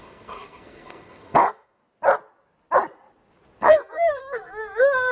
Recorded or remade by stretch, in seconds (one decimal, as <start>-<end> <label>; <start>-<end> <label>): 0.0-1.8 remade; 1.8-3.6 recorded; 3.6-5.1 remade